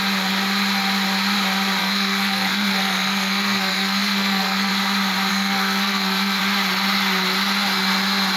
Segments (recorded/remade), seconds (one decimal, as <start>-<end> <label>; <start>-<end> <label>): 0.0-1.8 recorded; 1.8-4.7 remade; 4.7-5.3 recorded; 5.3-6.4 remade; 6.4-8.4 recorded